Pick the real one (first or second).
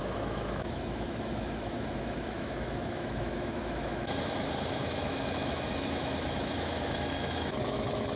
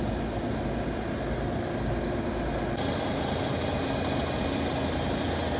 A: second